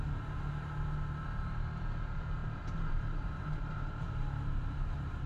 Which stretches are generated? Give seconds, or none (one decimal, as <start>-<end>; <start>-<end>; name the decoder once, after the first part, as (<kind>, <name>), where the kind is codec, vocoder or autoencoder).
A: 2.4-5.3 (vocoder, BigVGAN v2)